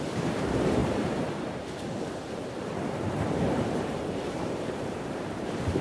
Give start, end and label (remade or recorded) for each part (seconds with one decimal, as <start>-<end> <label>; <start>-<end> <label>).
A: 0.0-5.8 remade